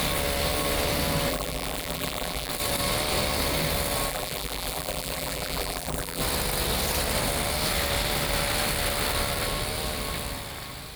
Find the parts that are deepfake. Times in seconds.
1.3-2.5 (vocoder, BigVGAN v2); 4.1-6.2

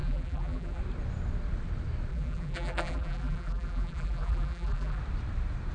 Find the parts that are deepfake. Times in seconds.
0.0-0.8 (vocoder, BigVGAN v2); 2.1-5.0

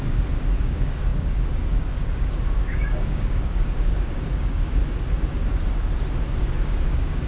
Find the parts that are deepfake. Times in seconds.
0.0-4.8 (codec, DAC); 6.4-7.3

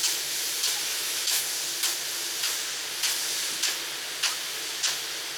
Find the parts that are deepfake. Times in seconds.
0.9-1.4 (autoencoder, DAC-VAE)